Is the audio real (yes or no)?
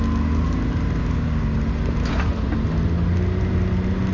yes